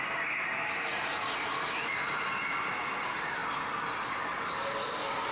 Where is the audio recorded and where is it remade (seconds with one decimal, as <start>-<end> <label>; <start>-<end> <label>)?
0.0-5.3 recorded